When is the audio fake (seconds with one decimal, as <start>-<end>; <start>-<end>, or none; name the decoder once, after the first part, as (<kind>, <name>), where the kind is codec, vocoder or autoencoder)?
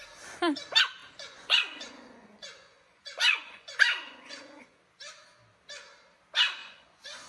1.0-4.8 (vocoder, Vocos); 6.6-7.3